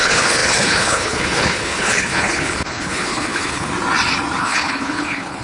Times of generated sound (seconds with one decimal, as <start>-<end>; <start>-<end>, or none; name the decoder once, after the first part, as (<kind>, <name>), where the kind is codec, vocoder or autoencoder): 0.0-3.7 (codec, HILCodec); 4.4-5.4